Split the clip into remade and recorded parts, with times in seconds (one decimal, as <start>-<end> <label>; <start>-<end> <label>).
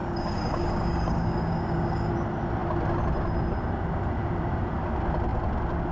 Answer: 0.0-2.1 remade; 2.1-5.9 recorded